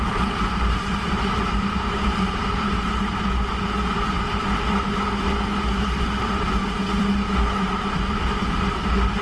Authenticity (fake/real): fake